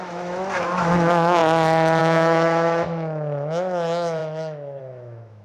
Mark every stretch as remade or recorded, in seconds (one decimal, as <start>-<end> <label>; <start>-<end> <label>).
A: 0.0-1.4 remade; 1.4-2.0 recorded; 2.0-5.4 remade